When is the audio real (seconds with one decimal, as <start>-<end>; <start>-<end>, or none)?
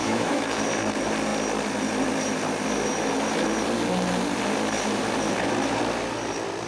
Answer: 0.6-6.7